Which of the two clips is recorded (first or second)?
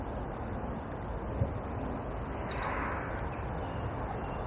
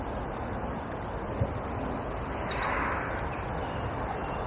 first